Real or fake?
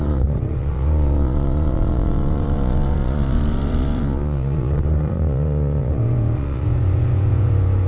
fake